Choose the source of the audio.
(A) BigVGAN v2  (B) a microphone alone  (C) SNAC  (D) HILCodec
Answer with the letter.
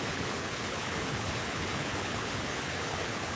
D